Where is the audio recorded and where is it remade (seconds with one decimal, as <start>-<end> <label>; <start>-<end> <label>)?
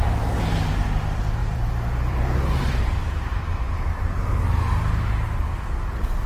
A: 0.0-1.4 recorded; 1.4-3.4 remade; 3.4-6.3 recorded